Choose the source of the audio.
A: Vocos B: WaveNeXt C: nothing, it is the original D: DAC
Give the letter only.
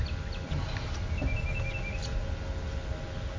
C